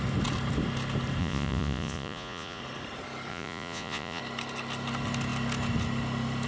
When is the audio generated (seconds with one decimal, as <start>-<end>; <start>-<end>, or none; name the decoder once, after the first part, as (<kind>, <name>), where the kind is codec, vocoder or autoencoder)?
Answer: 1.2-2.6 (vocoder, Vocos); 3.3-4.2